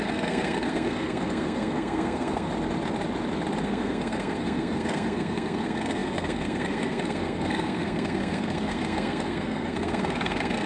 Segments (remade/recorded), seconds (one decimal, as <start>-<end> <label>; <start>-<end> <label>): 0.0-2.5 remade; 2.5-3.6 recorded; 3.6-10.7 remade